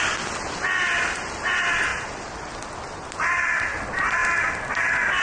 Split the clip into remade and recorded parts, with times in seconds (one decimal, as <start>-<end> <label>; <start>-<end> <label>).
0.0-5.2 recorded